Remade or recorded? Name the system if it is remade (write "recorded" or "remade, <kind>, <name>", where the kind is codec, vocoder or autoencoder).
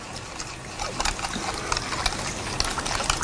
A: recorded